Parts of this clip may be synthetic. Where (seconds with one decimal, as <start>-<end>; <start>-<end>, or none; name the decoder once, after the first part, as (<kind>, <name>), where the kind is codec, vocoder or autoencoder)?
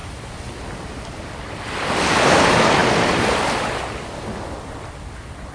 none